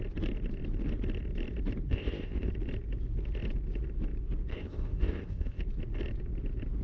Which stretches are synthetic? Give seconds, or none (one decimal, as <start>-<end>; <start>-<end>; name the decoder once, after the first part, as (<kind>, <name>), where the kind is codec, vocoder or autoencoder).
1.9-2.5 (codec, ZipCodec); 4.5-5.6